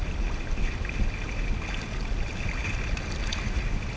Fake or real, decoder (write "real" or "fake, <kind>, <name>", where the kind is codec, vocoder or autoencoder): real